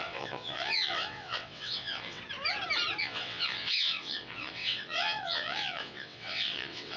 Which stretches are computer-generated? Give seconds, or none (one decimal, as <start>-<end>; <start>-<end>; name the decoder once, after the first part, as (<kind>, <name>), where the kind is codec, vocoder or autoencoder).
0.0-2.2 (vocoder, WaveNeXt); 3.0-7.0